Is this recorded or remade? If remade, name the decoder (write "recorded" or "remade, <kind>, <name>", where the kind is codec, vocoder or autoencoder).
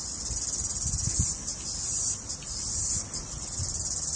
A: recorded